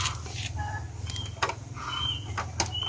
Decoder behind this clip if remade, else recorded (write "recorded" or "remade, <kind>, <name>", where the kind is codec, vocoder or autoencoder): recorded